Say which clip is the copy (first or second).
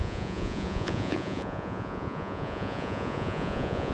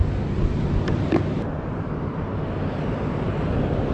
first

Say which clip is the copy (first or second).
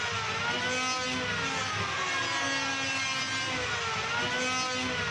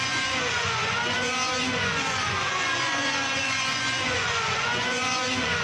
second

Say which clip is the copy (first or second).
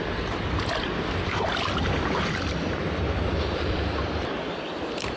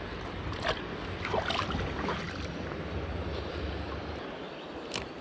first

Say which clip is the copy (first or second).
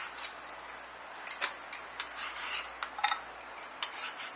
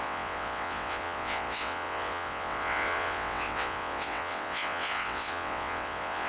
second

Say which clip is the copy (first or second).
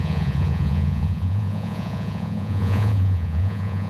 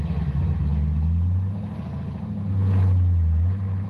first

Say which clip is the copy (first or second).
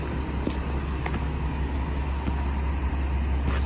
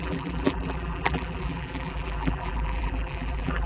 second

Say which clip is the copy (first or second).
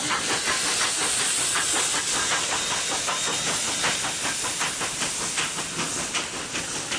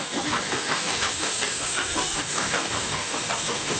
second